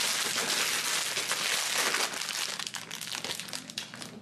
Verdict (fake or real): real